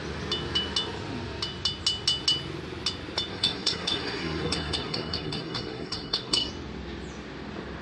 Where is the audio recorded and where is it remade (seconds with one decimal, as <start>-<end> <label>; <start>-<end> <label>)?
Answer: 0.0-3.3 recorded; 3.3-6.5 remade; 6.5-7.8 recorded